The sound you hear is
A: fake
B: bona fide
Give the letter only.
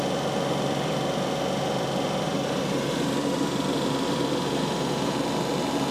B